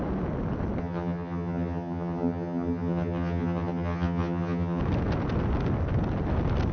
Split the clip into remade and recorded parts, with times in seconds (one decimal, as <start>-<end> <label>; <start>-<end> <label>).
0.0-0.8 recorded; 0.8-4.8 remade; 4.8-6.7 recorded